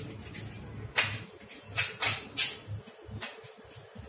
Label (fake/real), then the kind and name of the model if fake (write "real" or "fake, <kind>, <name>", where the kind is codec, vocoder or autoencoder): real